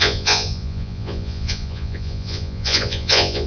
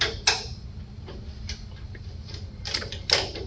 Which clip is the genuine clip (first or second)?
second